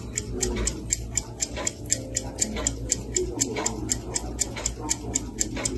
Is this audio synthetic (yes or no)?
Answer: no